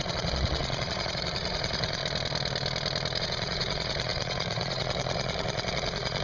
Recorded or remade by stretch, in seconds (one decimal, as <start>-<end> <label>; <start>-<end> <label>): 0.0-2.0 remade; 2.0-3.2 recorded; 3.2-6.2 remade